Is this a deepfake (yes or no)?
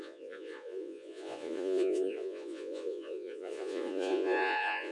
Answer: yes